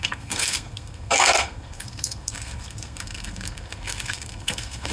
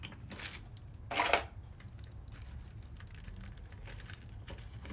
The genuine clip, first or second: second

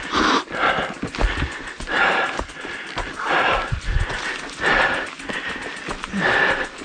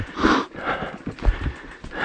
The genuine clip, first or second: first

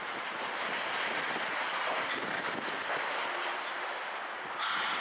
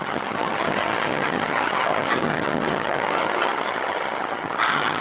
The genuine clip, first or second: first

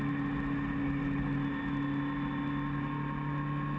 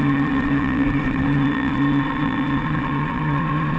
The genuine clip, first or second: first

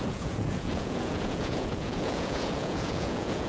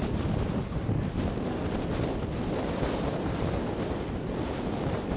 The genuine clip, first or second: second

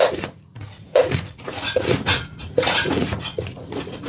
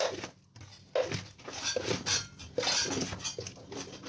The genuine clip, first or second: second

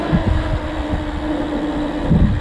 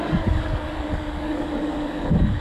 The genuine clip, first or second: first